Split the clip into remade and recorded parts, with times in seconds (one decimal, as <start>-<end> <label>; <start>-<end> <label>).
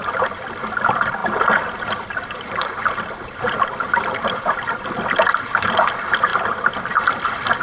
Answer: 0.0-1.2 recorded; 1.2-3.5 remade; 3.5-7.6 recorded